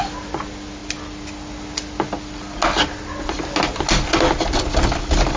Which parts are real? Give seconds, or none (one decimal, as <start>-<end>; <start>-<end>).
0.0-5.4